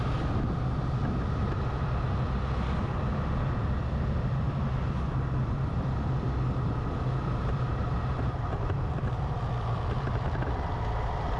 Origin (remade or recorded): remade